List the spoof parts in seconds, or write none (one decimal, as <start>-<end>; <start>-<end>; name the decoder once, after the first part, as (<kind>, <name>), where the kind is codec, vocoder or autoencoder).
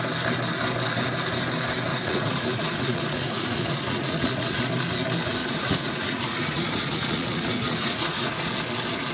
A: 1.9-4.6 (vocoder, Vocos); 5.4-8.5